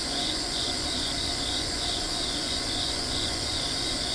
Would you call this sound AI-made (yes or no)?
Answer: yes